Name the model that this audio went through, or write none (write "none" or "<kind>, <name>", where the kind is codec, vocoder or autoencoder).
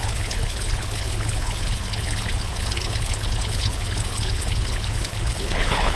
codec, HILCodec